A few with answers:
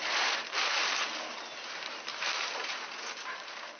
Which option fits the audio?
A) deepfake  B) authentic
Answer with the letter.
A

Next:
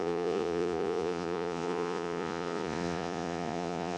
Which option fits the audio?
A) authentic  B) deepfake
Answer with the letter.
B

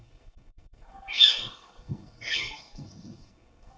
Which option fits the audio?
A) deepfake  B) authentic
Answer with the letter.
A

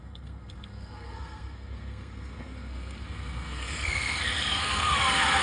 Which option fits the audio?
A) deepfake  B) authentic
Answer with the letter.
A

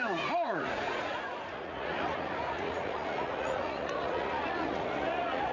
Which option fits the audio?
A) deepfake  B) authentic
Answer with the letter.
A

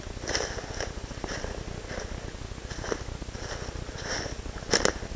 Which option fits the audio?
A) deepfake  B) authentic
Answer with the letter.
B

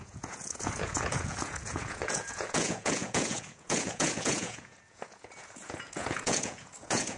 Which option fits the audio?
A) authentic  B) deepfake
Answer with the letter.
B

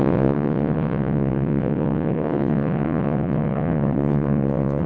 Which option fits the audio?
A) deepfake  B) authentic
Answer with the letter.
A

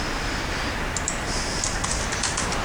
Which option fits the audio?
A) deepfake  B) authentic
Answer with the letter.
B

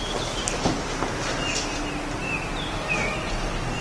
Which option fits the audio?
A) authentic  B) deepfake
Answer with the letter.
A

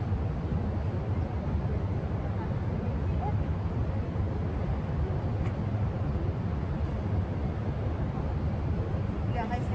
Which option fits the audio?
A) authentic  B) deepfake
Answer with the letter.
A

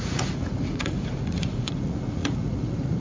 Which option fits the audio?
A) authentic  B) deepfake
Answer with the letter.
B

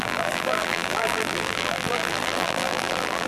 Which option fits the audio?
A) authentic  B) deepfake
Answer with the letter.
B